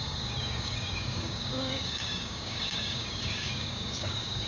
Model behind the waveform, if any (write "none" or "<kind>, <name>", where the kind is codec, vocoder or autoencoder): codec, DAC